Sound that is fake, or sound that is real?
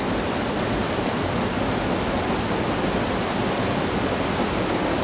real